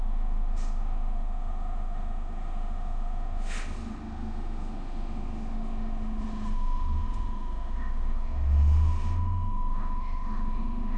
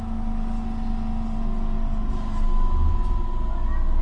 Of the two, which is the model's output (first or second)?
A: first